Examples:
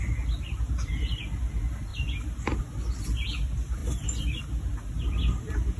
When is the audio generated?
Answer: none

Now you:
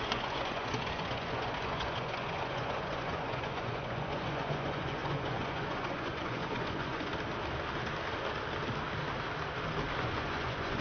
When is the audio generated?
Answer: 0.0-7.1 (vocoder, Vocos); 10.0-10.8

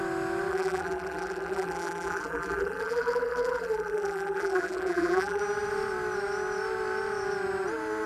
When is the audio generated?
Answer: 0.5-5.4 (vocoder, BigVGAN v2)

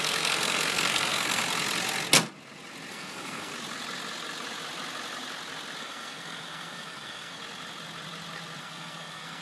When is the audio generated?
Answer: 0.0-1.4 (codec, SNAC); 2.9-3.5; 5.8-7.4; 8.6-9.4

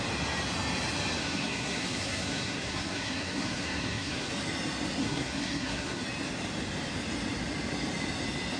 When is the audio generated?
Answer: 1.2-4.3 (codec, SNAC); 5.0-6.0